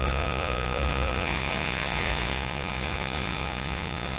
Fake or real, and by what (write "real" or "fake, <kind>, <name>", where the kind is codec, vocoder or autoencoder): fake, vocoder, Vocos